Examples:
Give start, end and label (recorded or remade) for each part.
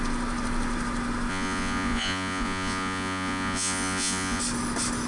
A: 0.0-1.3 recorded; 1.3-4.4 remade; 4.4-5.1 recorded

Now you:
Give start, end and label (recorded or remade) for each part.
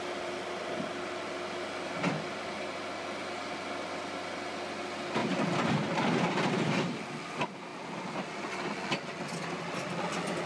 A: 0.0-10.5 recorded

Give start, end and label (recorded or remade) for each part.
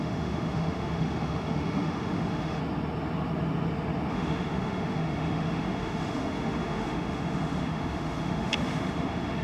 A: 0.0-2.6 remade; 2.6-4.1 recorded; 4.1-9.4 remade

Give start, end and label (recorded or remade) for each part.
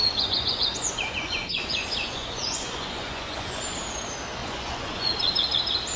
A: 0.0-3.6 remade; 3.6-4.4 recorded; 4.4-5.1 remade; 5.1-6.0 recorded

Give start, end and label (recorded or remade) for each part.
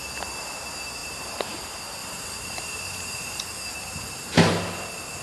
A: 0.0-1.0 recorded; 1.0-1.6 remade; 1.6-2.0 recorded; 2.0-3.4 remade; 3.4-5.2 recorded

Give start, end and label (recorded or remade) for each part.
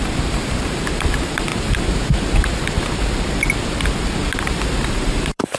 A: 0.0-1.5 remade; 1.5-4.9 recorded; 4.9-5.6 remade